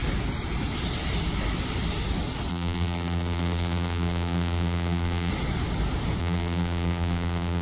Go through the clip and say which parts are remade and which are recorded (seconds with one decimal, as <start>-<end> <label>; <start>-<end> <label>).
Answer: 0.0-2.5 recorded; 2.5-5.3 remade; 5.3-6.2 recorded; 6.2-7.6 remade